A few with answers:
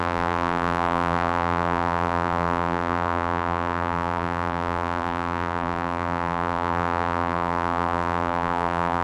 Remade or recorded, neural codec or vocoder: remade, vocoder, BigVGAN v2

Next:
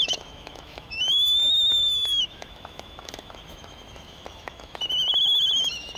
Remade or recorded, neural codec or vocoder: remade, autoencoder, DAC-VAE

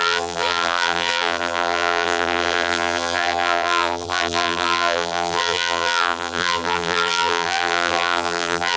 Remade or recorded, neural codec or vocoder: remade, vocoder, BigVGAN v2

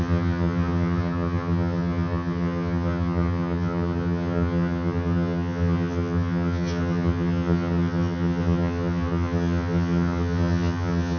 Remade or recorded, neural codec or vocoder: remade, vocoder, HiFi-GAN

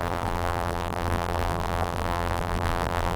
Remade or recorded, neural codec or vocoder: remade, vocoder, BigVGAN v2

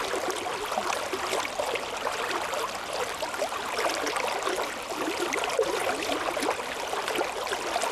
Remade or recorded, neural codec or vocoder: recorded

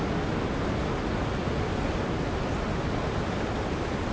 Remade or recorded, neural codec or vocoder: recorded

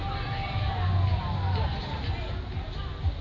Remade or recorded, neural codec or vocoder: recorded